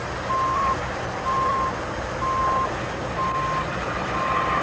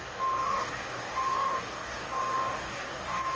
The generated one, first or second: second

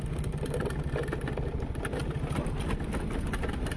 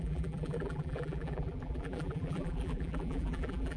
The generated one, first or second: second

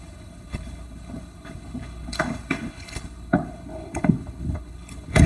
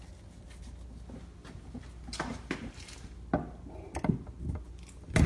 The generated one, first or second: first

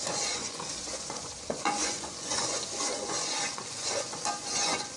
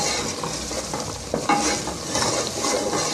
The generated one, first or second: first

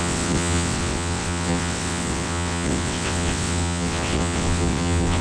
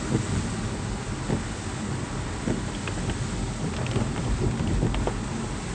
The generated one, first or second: first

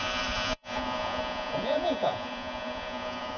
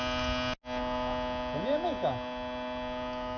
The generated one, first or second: first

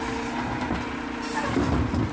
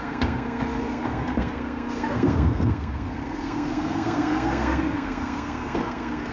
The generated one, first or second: second